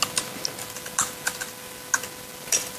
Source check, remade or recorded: recorded